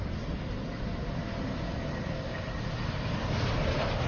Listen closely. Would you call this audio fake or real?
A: real